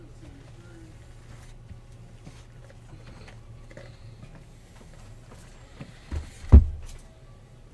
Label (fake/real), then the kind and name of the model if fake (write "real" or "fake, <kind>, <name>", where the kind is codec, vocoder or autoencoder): real